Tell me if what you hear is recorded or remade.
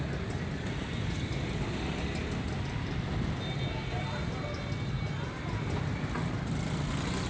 recorded